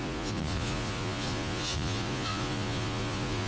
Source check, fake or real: fake